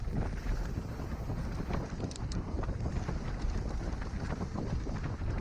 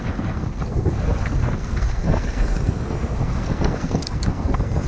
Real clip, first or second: first